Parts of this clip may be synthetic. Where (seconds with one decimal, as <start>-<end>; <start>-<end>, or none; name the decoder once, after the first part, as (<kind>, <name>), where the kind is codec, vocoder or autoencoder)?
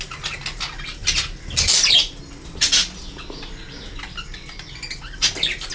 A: none